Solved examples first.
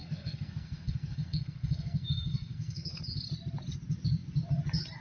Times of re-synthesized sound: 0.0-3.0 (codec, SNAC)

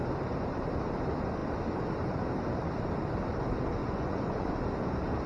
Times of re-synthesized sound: 3.8-4.5 (vocoder, Vocos)

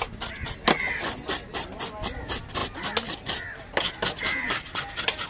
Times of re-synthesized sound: none

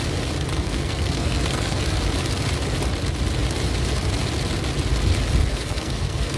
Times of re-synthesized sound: 0.5-1.8 (codec, SNAC); 5.5-6.4